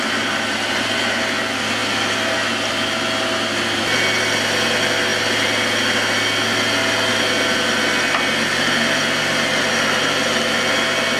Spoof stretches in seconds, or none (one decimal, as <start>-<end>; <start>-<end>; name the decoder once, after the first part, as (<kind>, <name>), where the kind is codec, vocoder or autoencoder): none